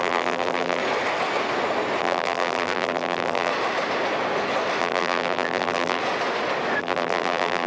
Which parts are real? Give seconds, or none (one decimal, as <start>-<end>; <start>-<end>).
0.8-2.0; 3.5-4.8; 6.0-6.8